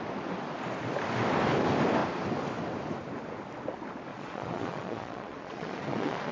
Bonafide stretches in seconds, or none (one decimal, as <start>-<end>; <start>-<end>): 0.0-4.1